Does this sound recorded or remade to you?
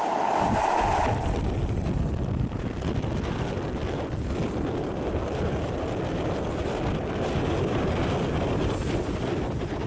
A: recorded